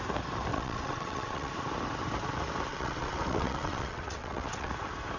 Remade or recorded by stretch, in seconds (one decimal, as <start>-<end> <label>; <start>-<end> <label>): 0.0-0.5 recorded; 0.5-1.5 remade; 1.5-2.7 recorded; 2.7-4.7 remade; 4.7-5.2 recorded

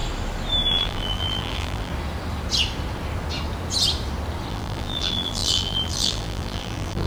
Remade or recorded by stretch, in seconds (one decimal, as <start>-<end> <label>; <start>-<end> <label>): 0.0-0.7 recorded; 0.7-1.9 remade; 1.9-4.5 recorded; 4.5-7.1 remade

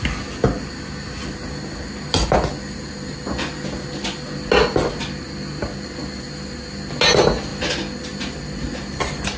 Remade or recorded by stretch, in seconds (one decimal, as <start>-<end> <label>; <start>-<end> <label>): 0.0-9.4 recorded

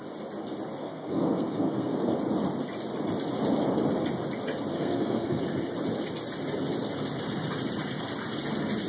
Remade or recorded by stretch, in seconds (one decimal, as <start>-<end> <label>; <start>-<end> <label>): 0.0-0.8 recorded; 0.8-2.1 remade; 2.1-4.7 recorded; 4.7-5.4 remade; 5.4-8.9 recorded

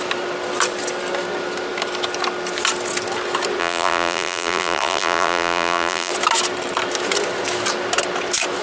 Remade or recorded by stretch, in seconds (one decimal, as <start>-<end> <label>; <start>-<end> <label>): 0.0-3.6 recorded; 3.6-6.1 remade; 6.1-8.6 recorded

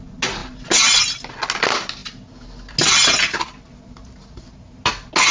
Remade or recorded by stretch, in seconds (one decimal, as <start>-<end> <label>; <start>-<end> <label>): 0.0-5.3 recorded

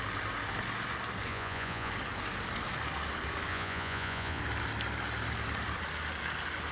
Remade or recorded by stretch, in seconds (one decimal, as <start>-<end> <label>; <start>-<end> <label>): 0.0-1.3 recorded; 1.3-1.9 remade; 1.9-3.5 recorded; 3.5-4.4 remade; 4.4-6.7 recorded